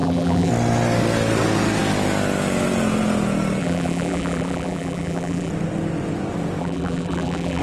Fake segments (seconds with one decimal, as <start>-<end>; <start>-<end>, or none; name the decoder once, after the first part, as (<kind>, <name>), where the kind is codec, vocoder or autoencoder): 0.0-0.5 (vocoder, BigVGAN v2); 3.6-5.5; 6.6-7.6